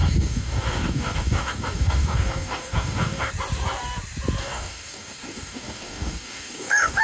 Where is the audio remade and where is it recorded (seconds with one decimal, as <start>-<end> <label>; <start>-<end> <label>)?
0.0-3.3 remade; 3.3-4.4 recorded; 4.4-7.0 remade